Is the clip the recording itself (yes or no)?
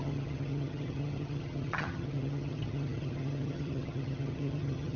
no